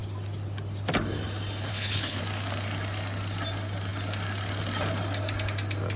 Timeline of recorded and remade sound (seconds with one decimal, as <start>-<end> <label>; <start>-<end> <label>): 0.0-1.7 recorded; 1.7-2.2 remade; 2.2-6.0 recorded